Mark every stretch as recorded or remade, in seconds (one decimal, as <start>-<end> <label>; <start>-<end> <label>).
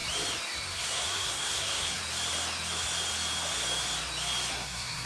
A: 0.0-0.7 recorded; 0.7-2.0 remade; 2.0-4.5 recorded; 4.5-5.1 remade